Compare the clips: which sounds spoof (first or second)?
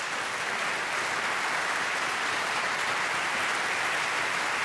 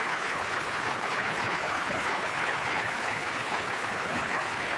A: second